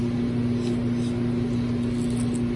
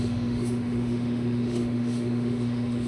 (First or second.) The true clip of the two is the first